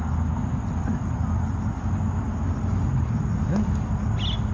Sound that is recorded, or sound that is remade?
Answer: recorded